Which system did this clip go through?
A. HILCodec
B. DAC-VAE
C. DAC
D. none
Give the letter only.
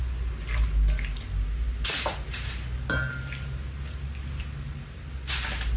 D